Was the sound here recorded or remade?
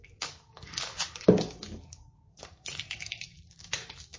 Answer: remade